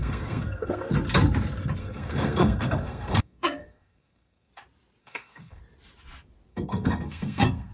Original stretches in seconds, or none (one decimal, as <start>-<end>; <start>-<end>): 0.9-1.8; 4.5-5.0; 5.6-6.5